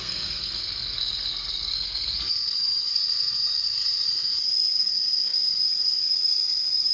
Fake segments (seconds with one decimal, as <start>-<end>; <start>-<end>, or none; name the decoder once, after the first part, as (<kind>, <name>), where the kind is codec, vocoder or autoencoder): 0.0-6.9 (codec, SNAC)